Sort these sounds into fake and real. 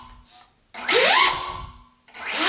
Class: real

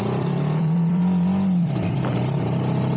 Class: fake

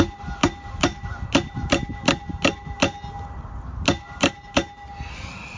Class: real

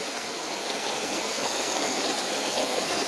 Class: fake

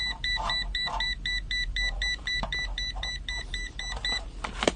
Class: fake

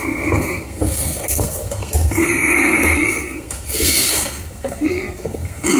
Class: fake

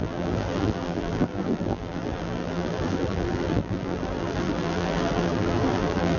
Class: fake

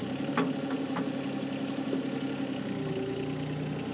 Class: real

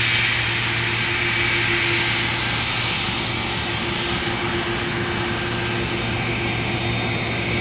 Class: real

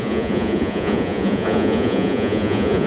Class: fake